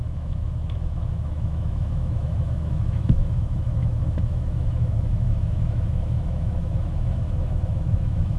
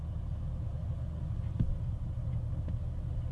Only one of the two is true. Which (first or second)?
second